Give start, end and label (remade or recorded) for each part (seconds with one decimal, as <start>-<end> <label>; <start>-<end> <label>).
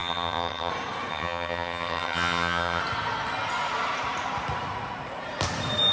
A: 0.0-0.7 remade; 0.7-1.1 recorded; 1.1-2.8 remade; 2.8-5.9 recorded